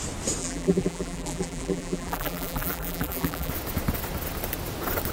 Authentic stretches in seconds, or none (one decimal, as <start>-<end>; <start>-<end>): 0.0-0.4; 3.5-5.1